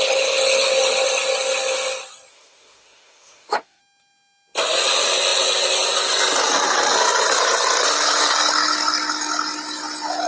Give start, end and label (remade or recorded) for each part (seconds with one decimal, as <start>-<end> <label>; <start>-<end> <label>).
0.0-2.3 recorded; 2.3-3.8 remade; 3.8-10.3 recorded